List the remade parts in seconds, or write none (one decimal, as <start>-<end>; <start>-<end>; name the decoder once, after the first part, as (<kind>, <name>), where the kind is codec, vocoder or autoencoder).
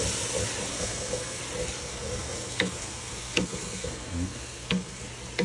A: 0.7-1.4 (codec, SNAC); 1.8-5.0